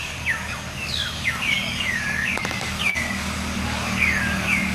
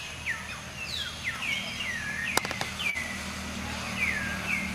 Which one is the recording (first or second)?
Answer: second